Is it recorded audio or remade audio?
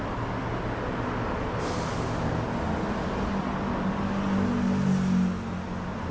recorded